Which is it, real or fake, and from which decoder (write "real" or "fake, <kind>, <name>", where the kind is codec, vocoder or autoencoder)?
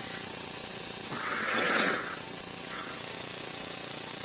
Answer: fake, vocoder, WaveNeXt